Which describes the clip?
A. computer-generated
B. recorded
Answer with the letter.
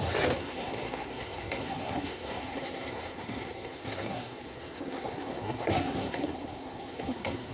A